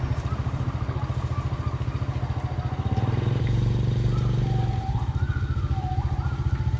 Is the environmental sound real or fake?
real